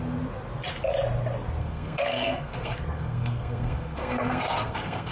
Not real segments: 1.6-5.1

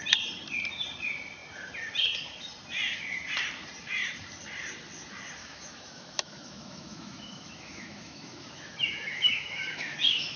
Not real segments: 5.4-10.4

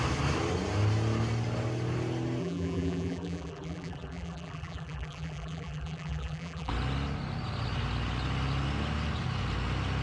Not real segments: 2.4-6.7

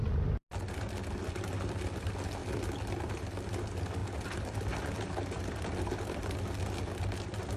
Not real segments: 2.4-3.4